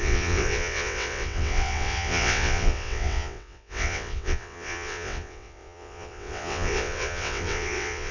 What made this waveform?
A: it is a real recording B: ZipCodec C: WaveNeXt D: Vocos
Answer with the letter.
C